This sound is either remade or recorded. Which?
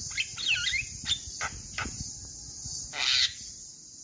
recorded